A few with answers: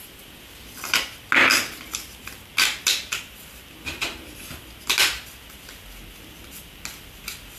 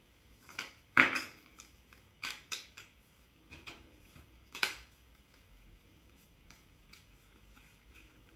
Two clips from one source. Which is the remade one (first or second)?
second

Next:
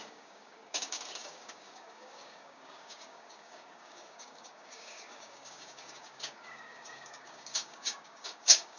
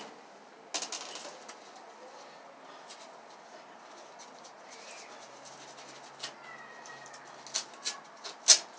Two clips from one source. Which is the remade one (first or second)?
first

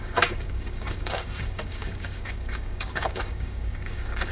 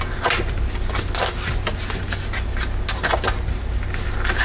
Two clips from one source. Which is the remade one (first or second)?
first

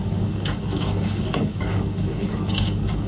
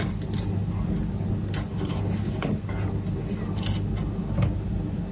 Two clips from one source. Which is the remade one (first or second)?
first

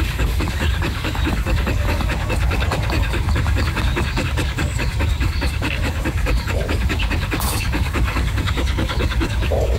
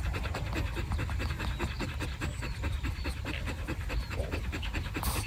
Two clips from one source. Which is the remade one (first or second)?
first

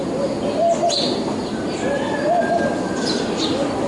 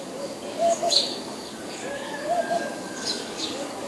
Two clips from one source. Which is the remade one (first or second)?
second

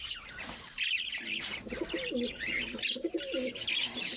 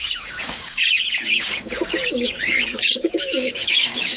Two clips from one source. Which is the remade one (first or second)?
second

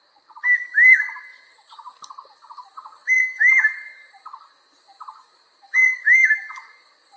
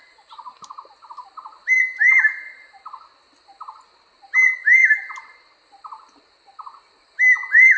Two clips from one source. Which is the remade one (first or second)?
first